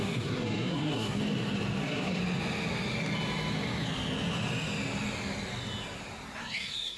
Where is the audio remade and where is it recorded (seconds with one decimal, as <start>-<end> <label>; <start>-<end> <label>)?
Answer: 0.0-1.2 remade; 1.2-1.8 recorded; 1.8-2.2 remade; 2.2-6.4 recorded; 6.4-7.0 remade